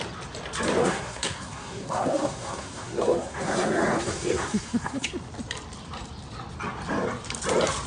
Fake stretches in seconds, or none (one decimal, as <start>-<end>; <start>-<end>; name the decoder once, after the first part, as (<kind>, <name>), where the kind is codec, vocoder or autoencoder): 0.8-5.1 (codec, SNAC)